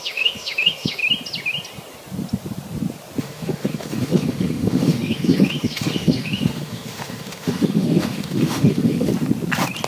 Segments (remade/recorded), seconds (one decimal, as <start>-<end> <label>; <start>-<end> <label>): 0.0-1.0 remade; 1.0-3.2 recorded; 3.2-9.1 remade; 9.1-9.9 recorded